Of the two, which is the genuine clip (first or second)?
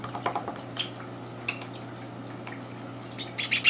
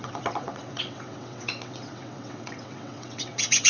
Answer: first